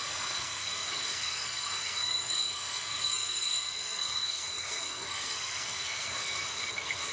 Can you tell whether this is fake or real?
fake